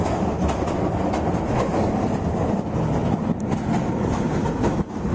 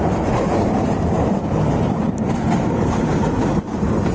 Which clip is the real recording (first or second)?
first